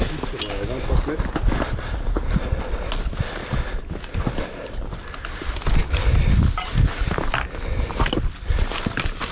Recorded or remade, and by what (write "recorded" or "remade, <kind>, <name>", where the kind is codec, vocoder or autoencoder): recorded